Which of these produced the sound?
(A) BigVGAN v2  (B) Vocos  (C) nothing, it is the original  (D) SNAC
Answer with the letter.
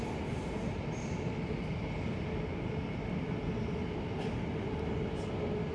C